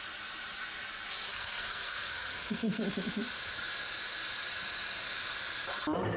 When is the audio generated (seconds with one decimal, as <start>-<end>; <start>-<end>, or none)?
1.3-2.8